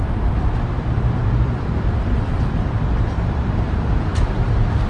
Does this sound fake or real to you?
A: fake